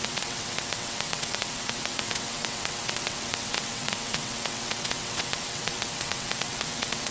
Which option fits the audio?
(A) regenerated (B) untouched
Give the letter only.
A